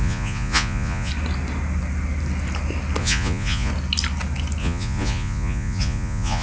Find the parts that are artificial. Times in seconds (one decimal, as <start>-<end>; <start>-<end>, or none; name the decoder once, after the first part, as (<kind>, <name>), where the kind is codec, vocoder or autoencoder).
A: 0.0-1.1 (vocoder, Vocos); 3.0-3.7; 4.6-6.4